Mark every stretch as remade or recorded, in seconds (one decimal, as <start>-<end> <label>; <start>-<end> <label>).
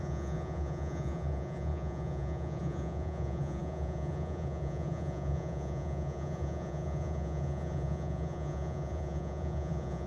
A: 0.0-10.1 remade